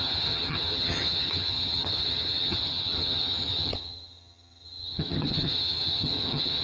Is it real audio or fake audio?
fake